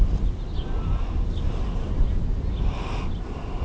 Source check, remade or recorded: recorded